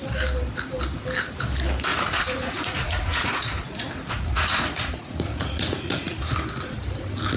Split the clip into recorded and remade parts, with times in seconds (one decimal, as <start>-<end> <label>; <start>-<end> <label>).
0.0-1.9 recorded; 1.9-6.3 remade; 6.3-7.4 recorded